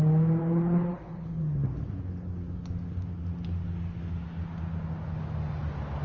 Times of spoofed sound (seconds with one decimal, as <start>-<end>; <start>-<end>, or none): 0.4-1.4